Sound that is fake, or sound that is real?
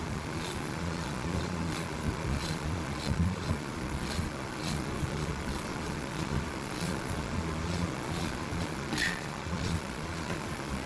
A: fake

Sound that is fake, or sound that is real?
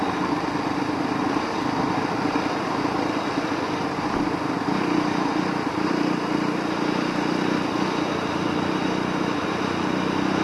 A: real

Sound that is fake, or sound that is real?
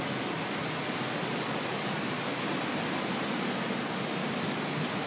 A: real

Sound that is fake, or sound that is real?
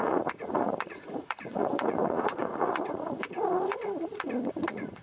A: fake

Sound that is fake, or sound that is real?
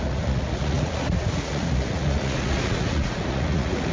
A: fake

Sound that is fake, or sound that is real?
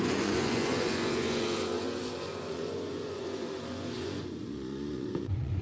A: fake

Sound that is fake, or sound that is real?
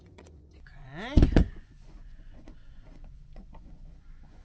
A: fake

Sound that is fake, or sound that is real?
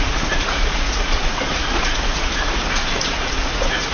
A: fake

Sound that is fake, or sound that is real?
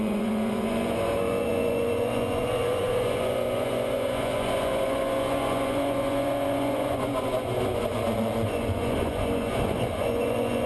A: fake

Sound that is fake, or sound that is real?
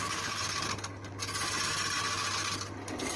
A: real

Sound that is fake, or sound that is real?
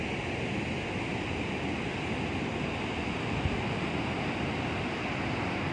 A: real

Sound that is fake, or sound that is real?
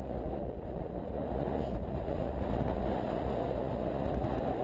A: fake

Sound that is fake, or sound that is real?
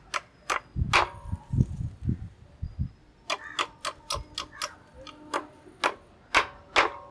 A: real